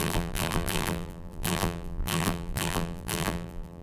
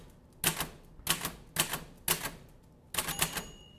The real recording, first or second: second